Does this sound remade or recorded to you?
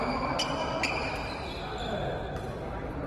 recorded